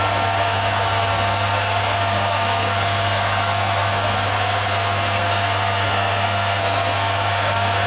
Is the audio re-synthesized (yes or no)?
yes